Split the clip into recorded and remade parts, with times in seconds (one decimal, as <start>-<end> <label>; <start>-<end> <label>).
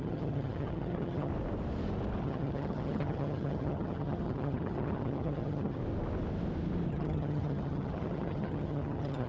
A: 0.0-1.3 remade; 1.3-2.2 recorded; 2.2-5.8 remade; 5.8-6.9 recorded; 6.9-9.3 remade